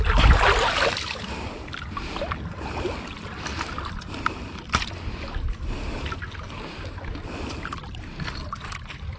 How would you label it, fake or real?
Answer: real